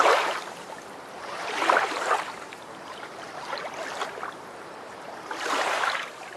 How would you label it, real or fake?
fake